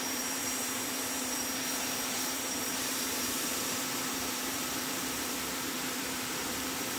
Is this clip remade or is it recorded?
remade